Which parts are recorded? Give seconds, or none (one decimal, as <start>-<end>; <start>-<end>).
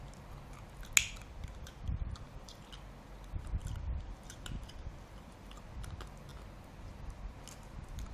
0.0-1.2; 2.6-3.6; 5.6-8.1